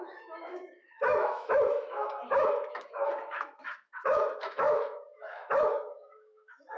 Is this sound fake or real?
fake